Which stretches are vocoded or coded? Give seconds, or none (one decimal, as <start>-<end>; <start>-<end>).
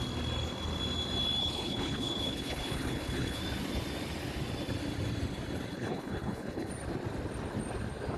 1.4-3.4; 5.7-6.7